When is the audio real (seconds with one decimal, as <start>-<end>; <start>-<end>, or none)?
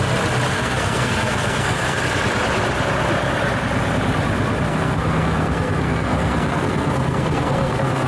0.0-0.5; 2.0-4.7